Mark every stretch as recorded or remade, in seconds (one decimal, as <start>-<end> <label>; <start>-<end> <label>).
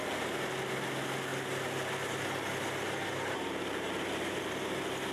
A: 0.0-5.1 recorded